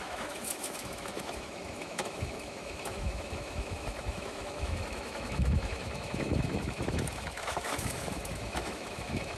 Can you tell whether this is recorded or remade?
remade